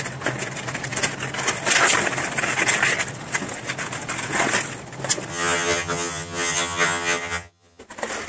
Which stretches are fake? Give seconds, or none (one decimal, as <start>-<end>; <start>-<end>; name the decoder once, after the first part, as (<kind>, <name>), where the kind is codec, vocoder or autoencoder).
5.3-7.8 (vocoder, HiFi-GAN)